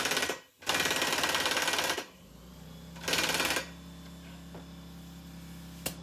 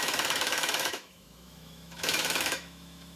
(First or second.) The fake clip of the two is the second